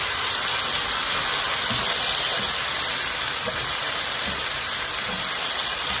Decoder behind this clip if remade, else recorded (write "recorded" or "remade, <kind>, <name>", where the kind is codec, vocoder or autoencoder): recorded